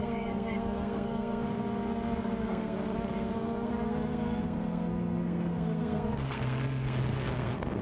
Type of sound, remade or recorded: remade